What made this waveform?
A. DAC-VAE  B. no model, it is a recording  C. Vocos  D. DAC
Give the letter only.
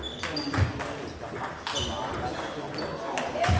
B